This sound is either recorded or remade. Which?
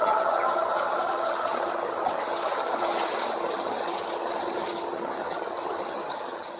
remade